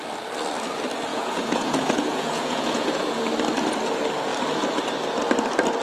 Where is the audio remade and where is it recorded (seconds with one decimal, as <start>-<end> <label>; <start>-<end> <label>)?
0.0-1.1 recorded; 1.1-3.2 remade; 3.2-5.8 recorded